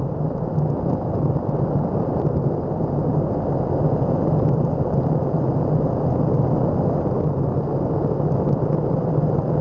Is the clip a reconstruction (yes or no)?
no